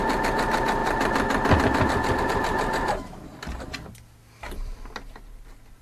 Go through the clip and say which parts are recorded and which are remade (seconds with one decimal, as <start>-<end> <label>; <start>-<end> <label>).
0.0-5.8 recorded